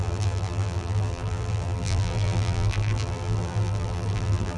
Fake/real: fake